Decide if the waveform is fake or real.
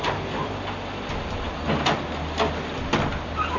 real